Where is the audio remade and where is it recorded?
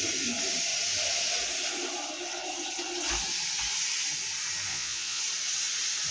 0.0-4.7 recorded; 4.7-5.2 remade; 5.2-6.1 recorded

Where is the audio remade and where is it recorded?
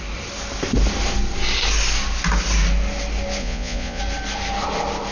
0.0-3.4 recorded; 3.4-4.0 remade; 4.0-5.1 recorded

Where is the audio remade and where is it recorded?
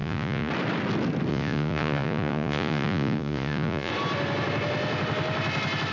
0.0-0.5 remade; 0.5-1.3 recorded; 1.3-3.9 remade; 3.9-5.9 recorded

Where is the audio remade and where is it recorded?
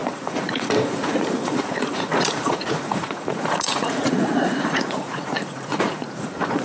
0.0-6.6 remade